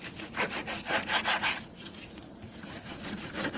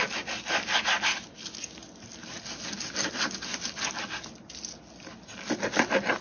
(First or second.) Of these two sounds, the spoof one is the first